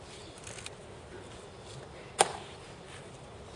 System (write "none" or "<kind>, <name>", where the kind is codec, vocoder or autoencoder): none